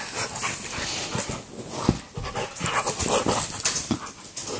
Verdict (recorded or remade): recorded